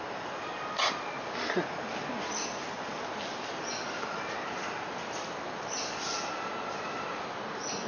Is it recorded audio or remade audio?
recorded